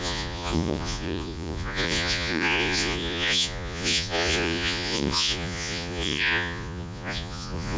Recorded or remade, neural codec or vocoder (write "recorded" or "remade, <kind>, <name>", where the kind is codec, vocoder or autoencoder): remade, vocoder, Vocos